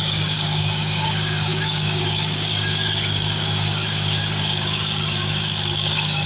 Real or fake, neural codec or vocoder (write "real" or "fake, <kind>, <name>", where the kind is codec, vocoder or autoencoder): fake, codec, DAC